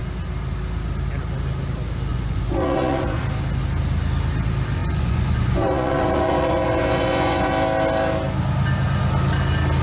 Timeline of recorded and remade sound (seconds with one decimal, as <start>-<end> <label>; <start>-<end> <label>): 0.0-2.1 recorded; 2.1-3.2 remade; 3.2-4.8 recorded; 4.8-7.5 remade; 7.5-9.8 recorded